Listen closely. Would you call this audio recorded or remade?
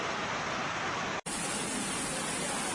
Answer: recorded